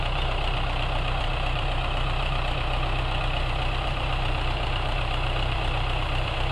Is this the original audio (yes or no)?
no